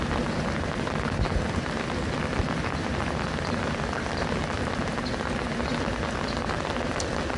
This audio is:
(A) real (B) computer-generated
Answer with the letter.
A